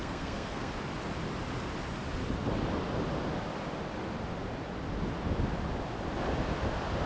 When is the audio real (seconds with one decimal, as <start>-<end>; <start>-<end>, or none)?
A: 0.7-7.1